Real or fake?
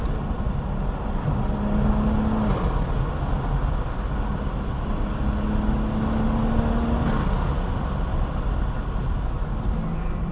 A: real